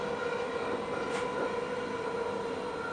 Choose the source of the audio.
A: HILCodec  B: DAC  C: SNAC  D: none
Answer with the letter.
D